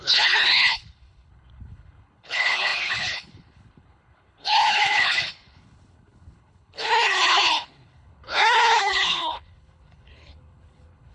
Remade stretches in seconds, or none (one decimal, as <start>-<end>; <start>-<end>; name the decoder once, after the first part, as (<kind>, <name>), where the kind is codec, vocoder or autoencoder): 0.0-11.1 (codec, HILCodec)